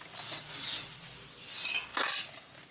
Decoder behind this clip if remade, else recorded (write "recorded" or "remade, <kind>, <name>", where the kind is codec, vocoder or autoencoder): recorded